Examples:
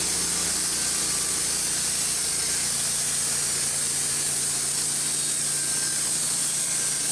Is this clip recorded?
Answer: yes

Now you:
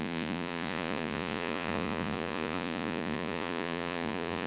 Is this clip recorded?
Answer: no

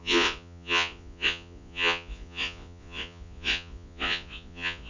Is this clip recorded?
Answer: no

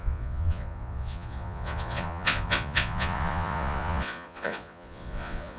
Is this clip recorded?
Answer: no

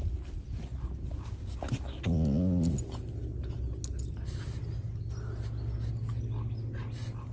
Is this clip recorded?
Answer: yes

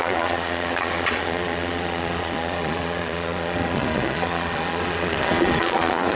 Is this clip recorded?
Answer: no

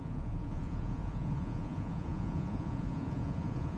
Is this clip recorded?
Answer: no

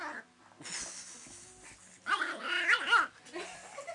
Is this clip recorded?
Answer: yes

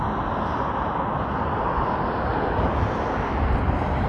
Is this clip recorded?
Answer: yes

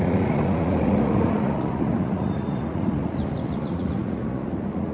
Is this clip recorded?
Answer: no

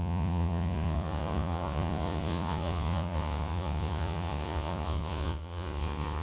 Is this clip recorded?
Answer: no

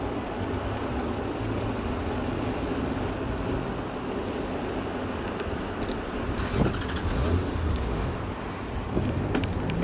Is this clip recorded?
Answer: yes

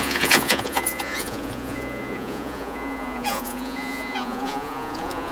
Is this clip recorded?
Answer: no